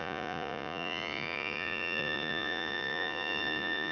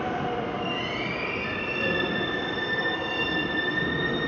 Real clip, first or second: second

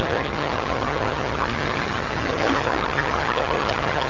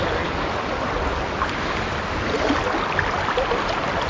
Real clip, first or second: second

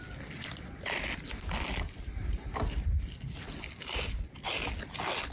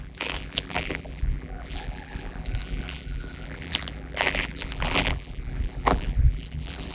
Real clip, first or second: first